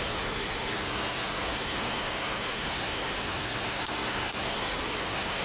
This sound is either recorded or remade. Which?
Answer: remade